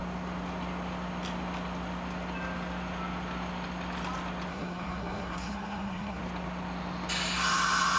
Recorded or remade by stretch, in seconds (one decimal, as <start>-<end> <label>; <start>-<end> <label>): 0.0-4.5 recorded; 4.5-6.2 remade; 6.2-8.0 recorded